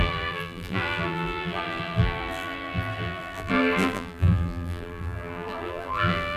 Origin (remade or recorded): remade